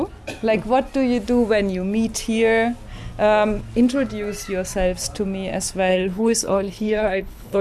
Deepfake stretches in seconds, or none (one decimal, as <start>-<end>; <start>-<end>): 5.9-7.6

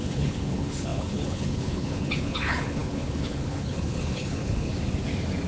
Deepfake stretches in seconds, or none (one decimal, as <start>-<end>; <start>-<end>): 0.0-4.7

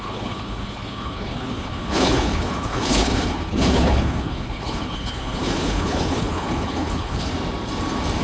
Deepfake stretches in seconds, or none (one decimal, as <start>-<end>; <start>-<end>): 0.0-7.3

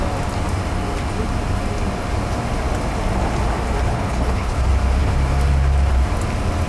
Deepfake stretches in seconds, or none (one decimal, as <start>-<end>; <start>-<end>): 3.9-4.6